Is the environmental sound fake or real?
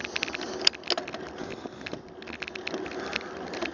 real